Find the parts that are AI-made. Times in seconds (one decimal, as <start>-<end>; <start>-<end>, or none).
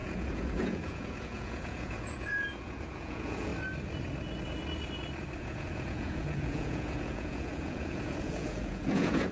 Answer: 0.0-3.5; 5.4-9.3